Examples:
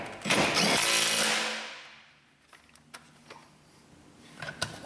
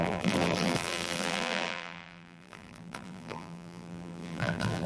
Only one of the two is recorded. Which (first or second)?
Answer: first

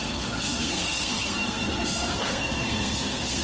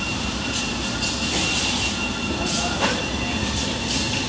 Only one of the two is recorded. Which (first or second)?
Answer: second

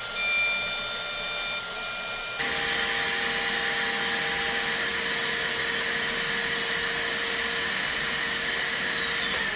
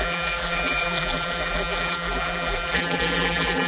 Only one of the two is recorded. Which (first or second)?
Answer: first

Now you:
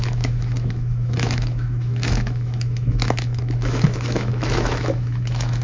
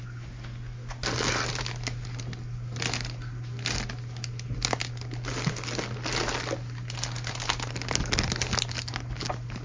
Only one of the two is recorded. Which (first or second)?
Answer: second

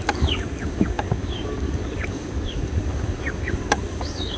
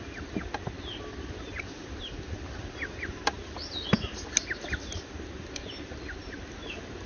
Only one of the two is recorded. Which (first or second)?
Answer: second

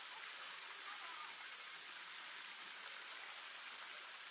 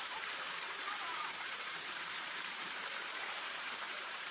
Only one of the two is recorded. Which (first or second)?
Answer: first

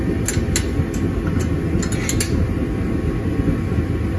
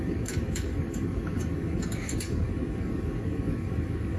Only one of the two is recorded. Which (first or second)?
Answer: first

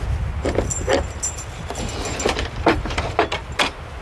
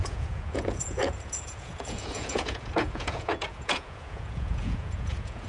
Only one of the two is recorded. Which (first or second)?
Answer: first